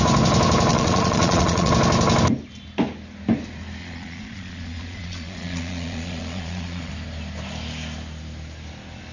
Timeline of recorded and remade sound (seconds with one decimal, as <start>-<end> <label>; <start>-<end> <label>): 0.0-0.7 recorded; 0.7-1.7 remade; 1.7-3.8 recorded; 3.8-6.9 remade; 6.9-9.1 recorded